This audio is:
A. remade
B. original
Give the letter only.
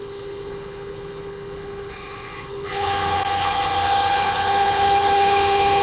A